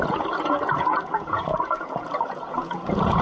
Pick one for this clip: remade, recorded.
remade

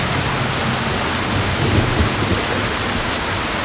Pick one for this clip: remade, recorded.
recorded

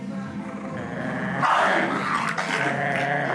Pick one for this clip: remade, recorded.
recorded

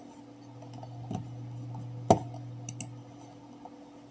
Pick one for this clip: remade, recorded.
recorded